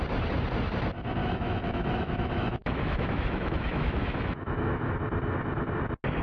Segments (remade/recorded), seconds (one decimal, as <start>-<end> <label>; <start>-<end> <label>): 0.0-1.2 recorded; 1.2-4.9 remade; 4.9-6.2 recorded